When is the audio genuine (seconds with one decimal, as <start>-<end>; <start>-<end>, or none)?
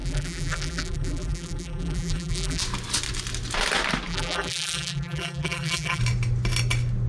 2.6-4.1; 6.0-7.1